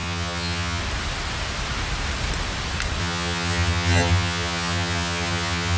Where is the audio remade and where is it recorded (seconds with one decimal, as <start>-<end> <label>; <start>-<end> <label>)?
0.0-0.8 remade; 0.8-3.0 recorded; 3.0-5.8 remade